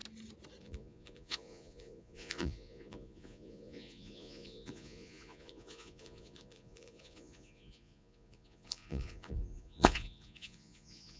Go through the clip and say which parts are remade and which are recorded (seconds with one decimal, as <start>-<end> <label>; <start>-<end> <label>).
0.0-0.6 recorded; 0.6-11.2 remade